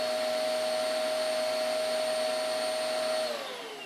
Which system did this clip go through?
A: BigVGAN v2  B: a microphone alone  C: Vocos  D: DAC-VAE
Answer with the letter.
B